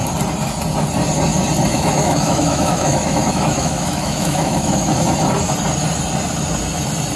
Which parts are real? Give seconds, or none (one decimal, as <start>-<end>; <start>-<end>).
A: 0.0-1.7; 4.9-7.2